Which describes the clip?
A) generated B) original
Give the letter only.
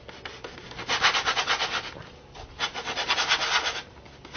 B